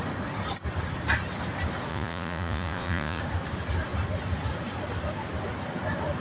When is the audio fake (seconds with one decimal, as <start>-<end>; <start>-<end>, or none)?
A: 1.9-3.2